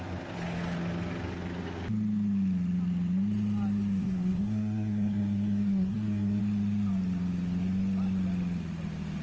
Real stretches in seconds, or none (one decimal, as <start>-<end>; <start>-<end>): 0.0-4.0; 6.4-9.2